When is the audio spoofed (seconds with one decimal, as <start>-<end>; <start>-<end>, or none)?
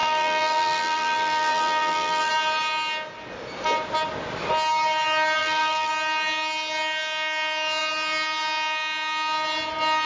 0.0-2.3; 5.4-5.9